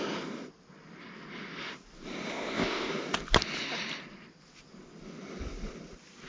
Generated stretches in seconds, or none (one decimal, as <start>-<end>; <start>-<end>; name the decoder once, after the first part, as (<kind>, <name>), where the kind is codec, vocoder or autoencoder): 2.3-2.9 (codec, ZipCodec)